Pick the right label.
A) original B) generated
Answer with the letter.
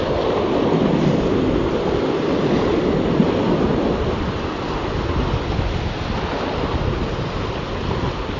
A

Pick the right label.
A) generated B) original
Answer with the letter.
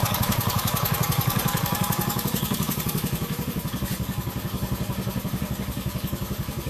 A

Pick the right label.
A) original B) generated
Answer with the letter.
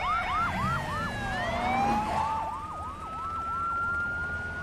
A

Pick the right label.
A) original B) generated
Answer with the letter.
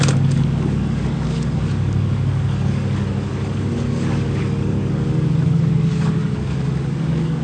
B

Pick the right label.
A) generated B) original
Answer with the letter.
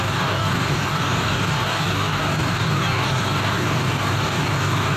A